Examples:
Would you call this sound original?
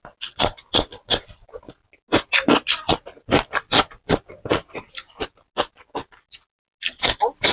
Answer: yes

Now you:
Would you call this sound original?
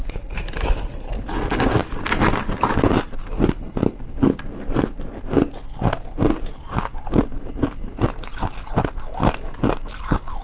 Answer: yes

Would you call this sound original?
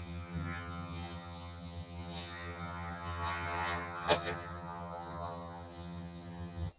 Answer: no